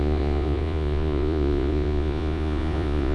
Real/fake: fake